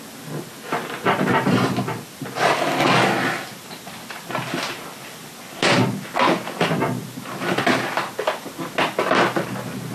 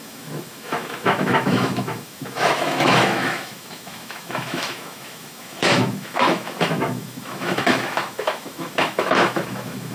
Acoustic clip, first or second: first